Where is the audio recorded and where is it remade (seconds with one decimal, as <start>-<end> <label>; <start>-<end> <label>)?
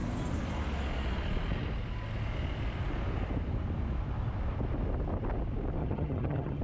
0.0-5.8 recorded; 5.8-6.6 remade